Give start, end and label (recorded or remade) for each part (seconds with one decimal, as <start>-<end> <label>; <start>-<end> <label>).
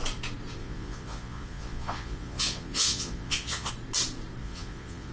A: 0.0-0.6 recorded; 0.6-3.7 remade; 3.7-4.4 recorded; 4.4-5.1 remade